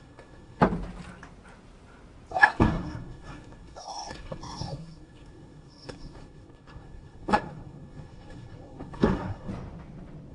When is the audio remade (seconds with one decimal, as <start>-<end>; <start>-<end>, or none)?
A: 0.0-0.6; 2.3-9.5